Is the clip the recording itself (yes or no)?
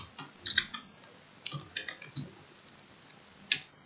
yes